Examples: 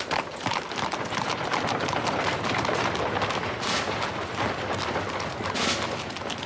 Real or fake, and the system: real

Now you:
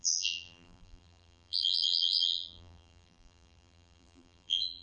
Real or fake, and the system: fake, vocoder, BigVGAN v2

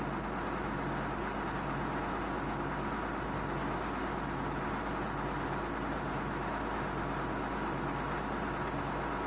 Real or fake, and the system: real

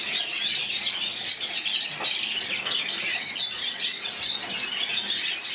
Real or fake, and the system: real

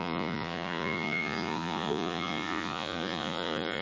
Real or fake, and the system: fake, vocoder, Vocos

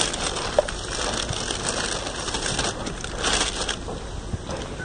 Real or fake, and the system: real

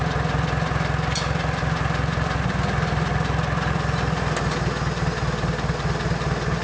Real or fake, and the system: real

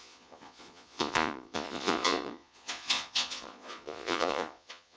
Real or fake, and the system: fake, vocoder, Vocos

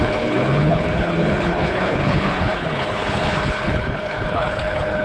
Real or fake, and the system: fake, codec, HILCodec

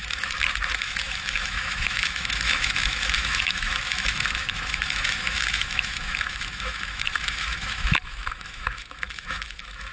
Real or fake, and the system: fake, autoencoder, DAC-VAE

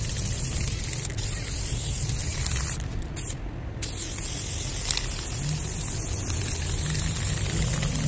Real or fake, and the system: real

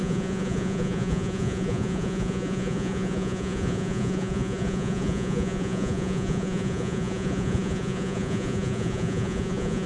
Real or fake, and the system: fake, vocoder, Vocos